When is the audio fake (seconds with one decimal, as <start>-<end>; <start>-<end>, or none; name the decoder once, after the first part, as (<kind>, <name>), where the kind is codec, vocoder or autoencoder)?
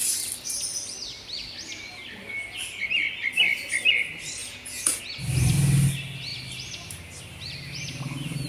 4.4-5.0 (vocoder, Vocos)